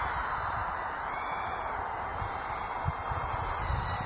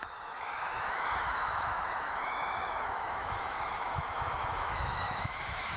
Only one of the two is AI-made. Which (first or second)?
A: second